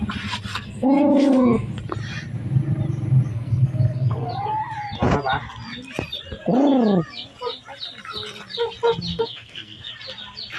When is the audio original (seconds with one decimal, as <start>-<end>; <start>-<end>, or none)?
0.0-0.5; 1.7-3.3; 4.3-9.1; 9.9-10.6